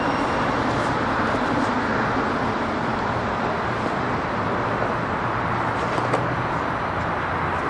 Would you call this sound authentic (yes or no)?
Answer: yes